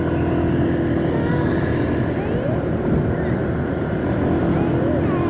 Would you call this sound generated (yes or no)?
no